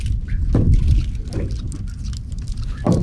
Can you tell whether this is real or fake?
real